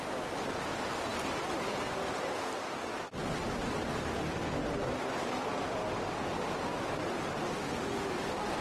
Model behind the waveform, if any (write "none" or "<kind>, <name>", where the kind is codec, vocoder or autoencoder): none